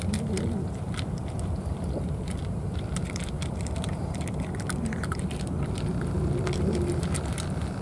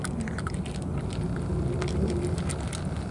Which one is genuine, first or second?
second